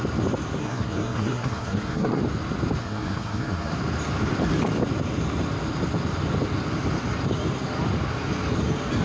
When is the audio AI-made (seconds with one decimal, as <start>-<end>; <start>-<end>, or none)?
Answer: 0.6-2.2; 2.8-3.7

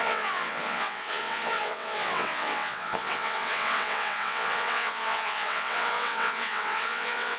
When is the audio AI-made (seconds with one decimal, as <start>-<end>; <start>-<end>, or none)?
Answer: 0.0-7.4

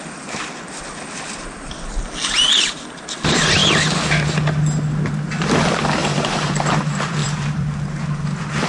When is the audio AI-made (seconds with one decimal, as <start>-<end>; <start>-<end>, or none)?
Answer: 6.0-6.5; 7.2-7.7

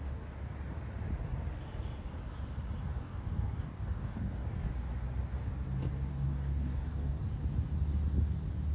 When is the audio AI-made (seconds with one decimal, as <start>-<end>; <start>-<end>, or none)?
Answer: 2.9-4.7; 6.1-7.2